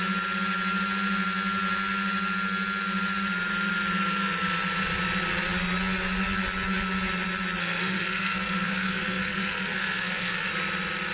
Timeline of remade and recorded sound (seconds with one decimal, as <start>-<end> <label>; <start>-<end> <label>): 0.0-7.6 recorded; 7.6-10.5 remade; 10.5-11.1 recorded